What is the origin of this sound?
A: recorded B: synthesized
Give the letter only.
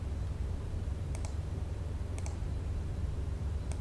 B